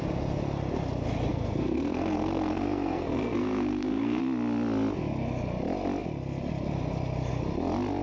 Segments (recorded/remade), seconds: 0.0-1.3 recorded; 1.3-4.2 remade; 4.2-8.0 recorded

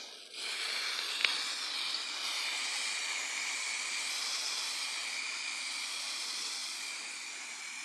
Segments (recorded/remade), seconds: 0.0-7.8 recorded

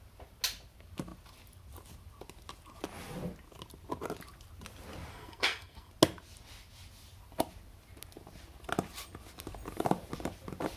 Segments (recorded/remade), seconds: 0.0-5.1 recorded; 5.1-5.9 remade; 5.9-10.8 recorded

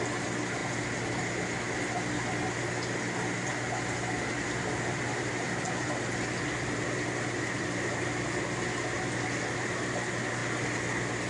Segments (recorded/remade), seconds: 0.0-11.3 recorded